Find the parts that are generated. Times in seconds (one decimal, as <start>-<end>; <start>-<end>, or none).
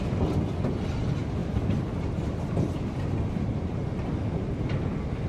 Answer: 1.4-3.9